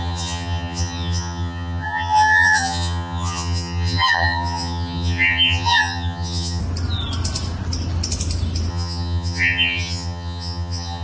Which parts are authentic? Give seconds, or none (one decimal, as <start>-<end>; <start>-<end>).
6.6-8.7